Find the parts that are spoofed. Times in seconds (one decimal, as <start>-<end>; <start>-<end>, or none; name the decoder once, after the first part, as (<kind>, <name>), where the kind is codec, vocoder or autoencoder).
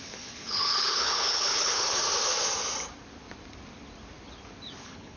0.0-2.0 (codec, HILCodec); 4.8-5.2